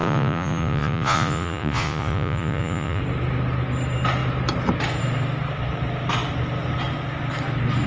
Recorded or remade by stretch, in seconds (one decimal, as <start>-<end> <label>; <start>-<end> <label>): 0.0-3.0 remade; 3.0-7.9 recorded